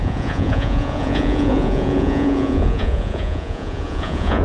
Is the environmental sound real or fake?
fake